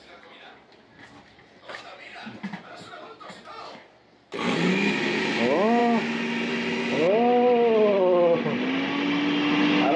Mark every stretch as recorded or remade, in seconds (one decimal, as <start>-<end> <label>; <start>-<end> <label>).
0.0-10.0 recorded